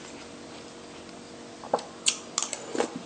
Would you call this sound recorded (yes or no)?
yes